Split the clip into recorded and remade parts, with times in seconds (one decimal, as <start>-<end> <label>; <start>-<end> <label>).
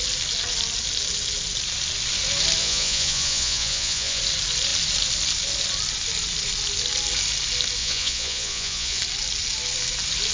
0.0-2.6 recorded; 2.6-4.2 remade; 4.2-7.8 recorded; 7.8-9.0 remade; 9.0-10.3 recorded